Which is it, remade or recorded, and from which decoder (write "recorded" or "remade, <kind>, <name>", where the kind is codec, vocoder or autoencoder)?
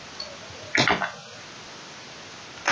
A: recorded